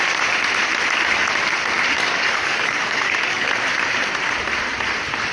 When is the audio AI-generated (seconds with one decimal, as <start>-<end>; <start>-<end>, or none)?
2.0-3.5